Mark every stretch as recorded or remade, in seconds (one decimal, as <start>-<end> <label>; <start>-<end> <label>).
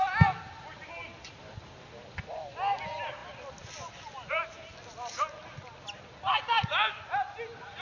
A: 0.0-7.8 recorded